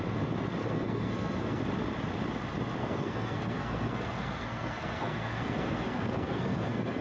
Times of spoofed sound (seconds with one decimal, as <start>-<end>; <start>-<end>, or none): 0.6-1.6; 2.8-7.0